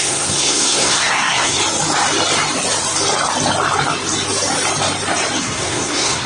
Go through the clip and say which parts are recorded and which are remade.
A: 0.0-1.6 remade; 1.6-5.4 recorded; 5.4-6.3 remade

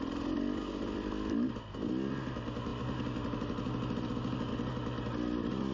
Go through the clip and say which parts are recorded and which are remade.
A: 0.0-5.7 recorded

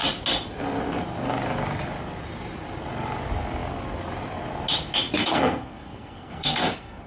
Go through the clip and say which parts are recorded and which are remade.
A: 0.0-5.2 recorded; 5.2-7.1 remade